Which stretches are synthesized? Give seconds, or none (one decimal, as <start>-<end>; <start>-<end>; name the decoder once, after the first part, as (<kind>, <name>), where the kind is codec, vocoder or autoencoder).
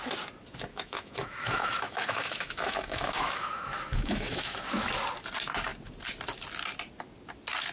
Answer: 0.7-4.9 (autoencoder, DAC-VAE)